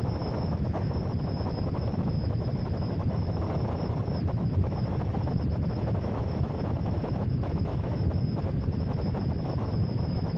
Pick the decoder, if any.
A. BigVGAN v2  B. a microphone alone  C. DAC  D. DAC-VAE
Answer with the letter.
D